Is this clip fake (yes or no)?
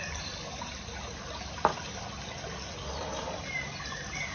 no